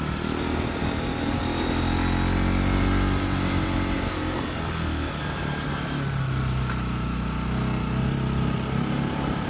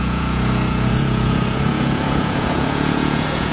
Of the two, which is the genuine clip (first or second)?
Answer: first